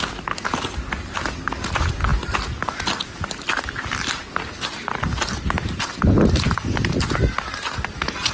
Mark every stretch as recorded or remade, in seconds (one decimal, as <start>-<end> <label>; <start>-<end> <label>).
0.0-8.3 recorded